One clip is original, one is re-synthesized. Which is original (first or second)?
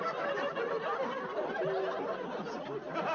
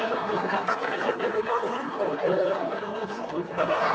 first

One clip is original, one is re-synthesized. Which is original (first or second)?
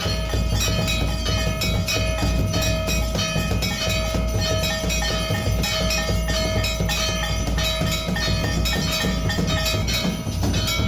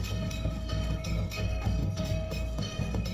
first